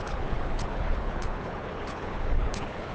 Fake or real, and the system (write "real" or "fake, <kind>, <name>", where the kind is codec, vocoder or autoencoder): fake, codec, HILCodec